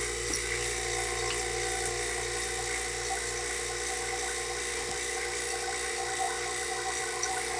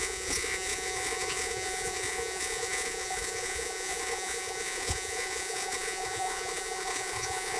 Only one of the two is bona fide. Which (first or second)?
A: first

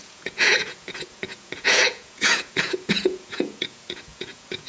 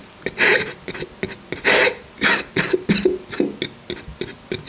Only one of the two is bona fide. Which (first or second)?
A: second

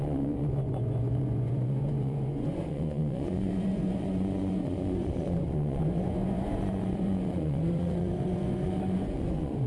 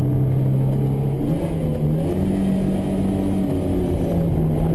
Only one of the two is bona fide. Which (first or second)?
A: second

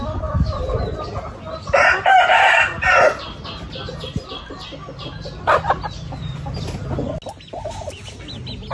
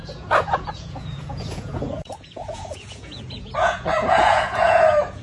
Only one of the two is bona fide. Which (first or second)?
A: first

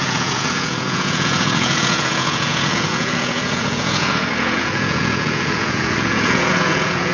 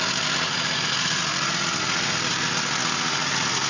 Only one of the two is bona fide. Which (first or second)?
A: second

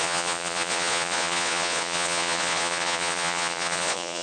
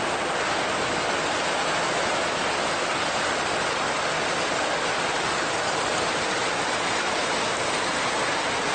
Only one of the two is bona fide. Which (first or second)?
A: second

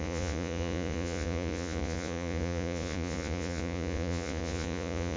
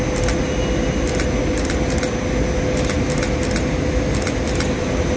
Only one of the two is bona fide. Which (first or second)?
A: second